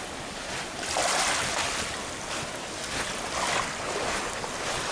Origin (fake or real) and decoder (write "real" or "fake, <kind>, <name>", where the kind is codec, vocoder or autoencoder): real